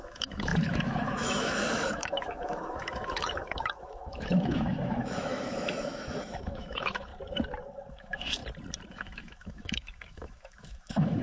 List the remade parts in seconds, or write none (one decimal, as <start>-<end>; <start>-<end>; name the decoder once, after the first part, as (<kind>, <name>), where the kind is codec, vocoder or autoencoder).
0.0-7.1 (autoencoder, DAC-VAE); 7.9-8.4; 8.9-11.2